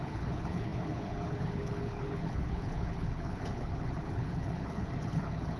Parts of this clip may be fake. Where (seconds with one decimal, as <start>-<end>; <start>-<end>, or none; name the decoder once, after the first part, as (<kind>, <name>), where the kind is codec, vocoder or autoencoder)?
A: 0.0-5.6 (codec, HILCodec)